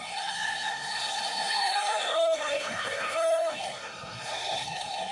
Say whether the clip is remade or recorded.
remade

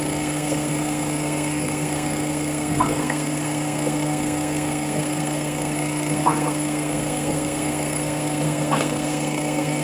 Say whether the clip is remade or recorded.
remade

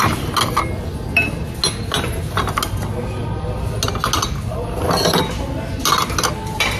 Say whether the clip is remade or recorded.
recorded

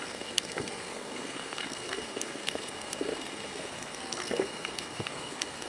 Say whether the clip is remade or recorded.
remade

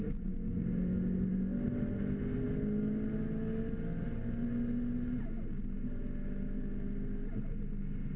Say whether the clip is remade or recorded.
recorded